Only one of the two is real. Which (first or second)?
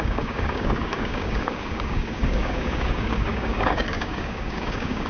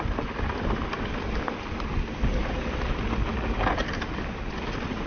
second